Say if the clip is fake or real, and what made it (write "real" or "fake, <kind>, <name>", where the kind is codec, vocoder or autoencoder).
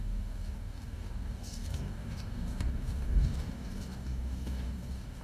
fake, codec, DAC